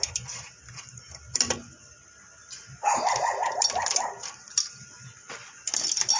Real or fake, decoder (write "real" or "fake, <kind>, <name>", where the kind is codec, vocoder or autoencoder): real